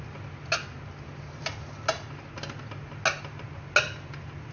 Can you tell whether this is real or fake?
real